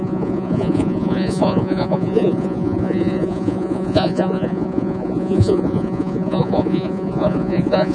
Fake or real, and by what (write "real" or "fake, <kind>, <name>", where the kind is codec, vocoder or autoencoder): fake, vocoder, Vocos